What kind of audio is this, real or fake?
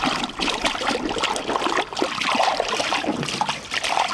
real